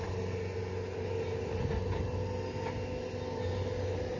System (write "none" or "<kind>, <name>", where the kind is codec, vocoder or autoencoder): none